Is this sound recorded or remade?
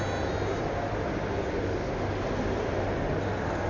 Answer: recorded